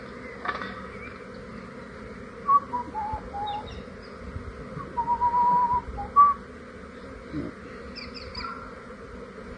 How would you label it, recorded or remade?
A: recorded